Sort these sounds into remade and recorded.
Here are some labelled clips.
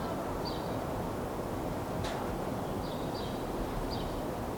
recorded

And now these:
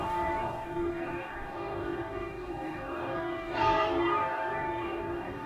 remade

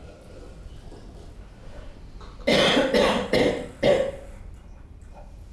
recorded